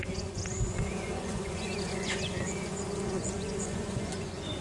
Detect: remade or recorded remade